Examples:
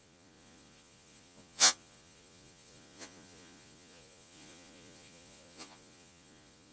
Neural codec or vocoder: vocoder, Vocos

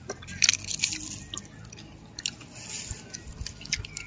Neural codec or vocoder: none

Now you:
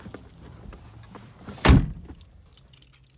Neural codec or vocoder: none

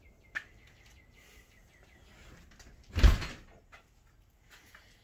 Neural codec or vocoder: none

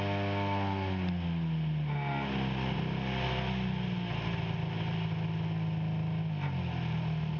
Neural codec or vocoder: none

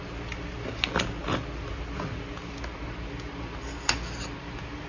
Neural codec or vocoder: none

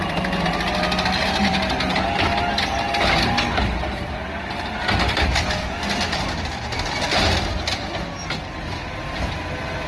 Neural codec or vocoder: none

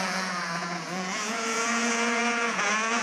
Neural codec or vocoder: vocoder, Vocos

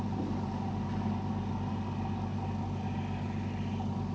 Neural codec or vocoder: none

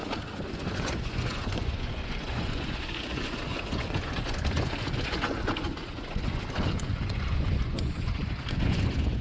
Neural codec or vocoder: vocoder, Vocos